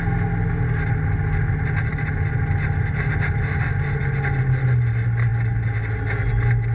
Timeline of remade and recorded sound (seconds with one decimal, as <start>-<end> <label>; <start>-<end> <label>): 0.0-6.7 recorded